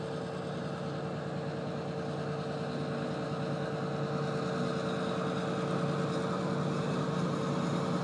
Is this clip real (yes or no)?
yes